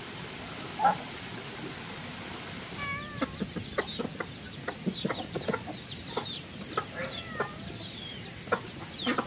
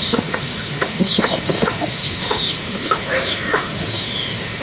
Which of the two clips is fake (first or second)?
second